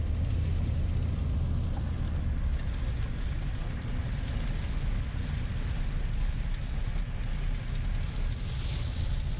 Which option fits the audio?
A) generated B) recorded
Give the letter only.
B